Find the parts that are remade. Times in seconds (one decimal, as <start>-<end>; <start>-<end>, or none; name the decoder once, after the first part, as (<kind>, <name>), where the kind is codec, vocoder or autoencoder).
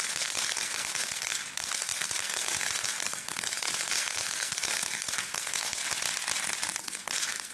0.0-5.8 (codec, SNAC); 6.8-7.5